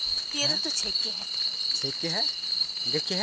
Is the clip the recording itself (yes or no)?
yes